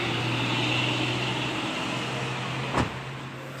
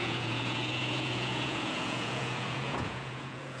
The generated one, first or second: second